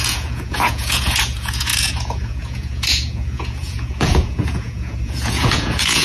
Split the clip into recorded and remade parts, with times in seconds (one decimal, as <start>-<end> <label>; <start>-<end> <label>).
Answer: 0.0-6.0 remade